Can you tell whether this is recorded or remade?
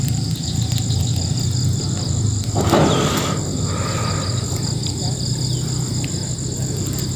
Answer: recorded